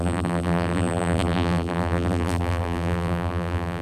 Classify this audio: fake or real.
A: fake